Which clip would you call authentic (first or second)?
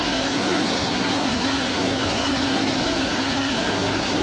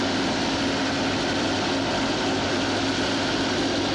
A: second